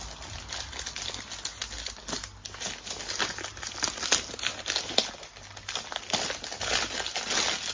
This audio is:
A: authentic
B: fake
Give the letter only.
A